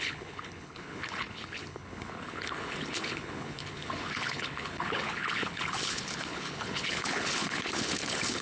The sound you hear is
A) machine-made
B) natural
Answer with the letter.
A